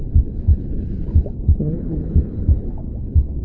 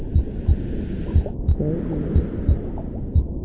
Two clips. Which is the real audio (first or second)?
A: second